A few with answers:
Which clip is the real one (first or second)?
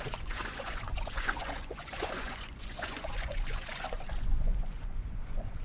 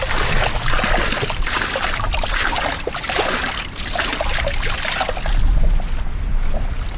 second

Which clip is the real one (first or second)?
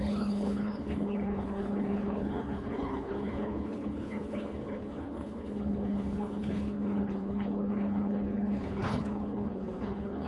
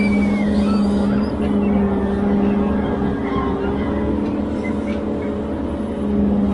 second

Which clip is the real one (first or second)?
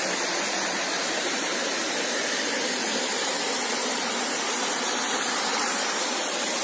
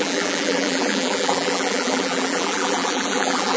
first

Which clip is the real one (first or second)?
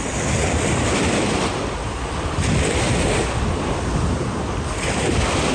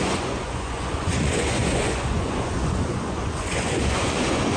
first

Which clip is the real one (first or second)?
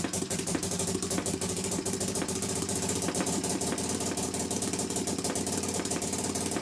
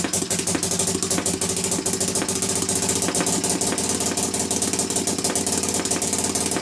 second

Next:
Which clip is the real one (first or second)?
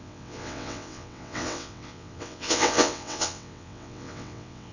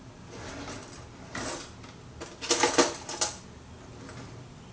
second